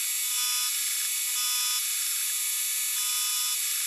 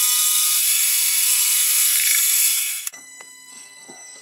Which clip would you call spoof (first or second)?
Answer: second